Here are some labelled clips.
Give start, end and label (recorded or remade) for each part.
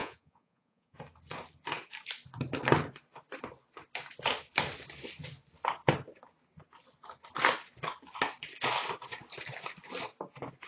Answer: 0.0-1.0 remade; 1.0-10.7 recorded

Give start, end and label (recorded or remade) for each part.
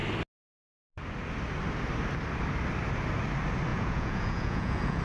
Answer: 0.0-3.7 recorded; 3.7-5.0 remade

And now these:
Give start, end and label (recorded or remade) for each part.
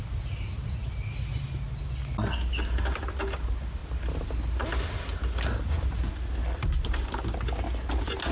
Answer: 0.0-8.3 recorded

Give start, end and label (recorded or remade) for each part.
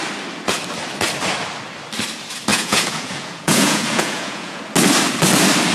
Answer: 0.0-2.5 recorded; 2.5-4.6 remade; 4.6-5.7 recorded